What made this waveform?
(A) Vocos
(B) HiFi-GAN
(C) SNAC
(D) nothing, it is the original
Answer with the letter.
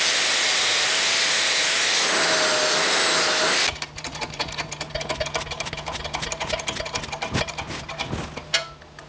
D